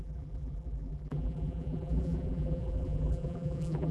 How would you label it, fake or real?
fake